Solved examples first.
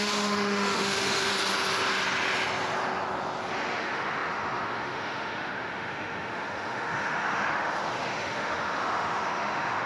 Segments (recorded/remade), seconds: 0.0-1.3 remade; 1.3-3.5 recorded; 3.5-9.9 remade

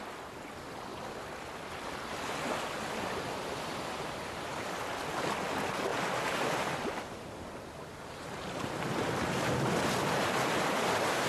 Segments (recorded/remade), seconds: 0.0-0.9 recorded; 0.9-5.0 remade; 5.0-5.9 recorded; 5.9-6.6 remade; 6.6-11.3 recorded

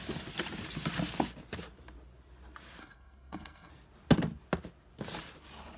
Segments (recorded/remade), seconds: 0.0-2.8 recorded; 2.8-3.7 remade; 3.7-5.8 recorded

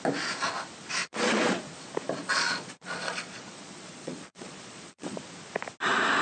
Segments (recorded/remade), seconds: 0.0-1.0 recorded; 1.0-1.7 remade; 1.7-2.2 recorded; 2.2-5.2 remade; 5.2-6.2 recorded

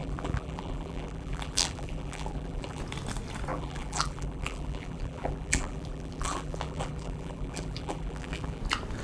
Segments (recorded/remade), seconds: 0.0-2.8 remade; 2.8-3.5 recorded; 3.5-8.6 remade; 8.6-9.0 recorded

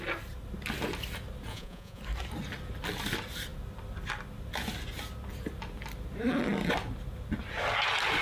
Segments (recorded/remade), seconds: 0.0-1.5 recorded; 1.5-2.0 remade; 2.0-8.2 recorded

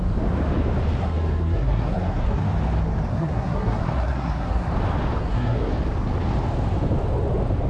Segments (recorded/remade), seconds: 0.0-1.0 recorded; 1.0-2.4 remade; 2.4-3.1 recorded; 3.1-4.7 remade; 4.7-5.2 recorded; 5.2-5.7 remade; 5.7-7.7 recorded

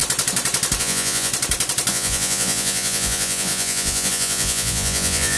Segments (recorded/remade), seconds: 0.0-0.8 recorded; 0.8-1.3 remade; 1.3-1.9 recorded; 1.9-5.4 remade